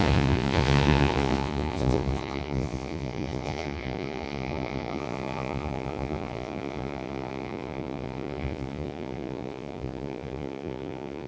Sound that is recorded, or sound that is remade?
remade